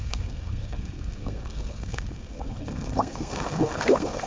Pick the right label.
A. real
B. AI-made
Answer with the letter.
B